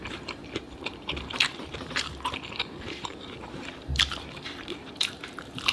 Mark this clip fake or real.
fake